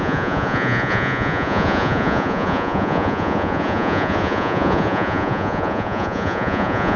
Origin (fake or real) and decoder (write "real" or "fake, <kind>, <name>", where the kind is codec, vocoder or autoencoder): fake, vocoder, Vocos